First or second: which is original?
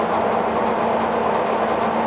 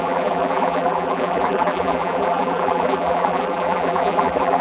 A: first